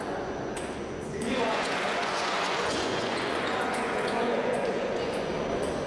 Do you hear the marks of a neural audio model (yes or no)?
yes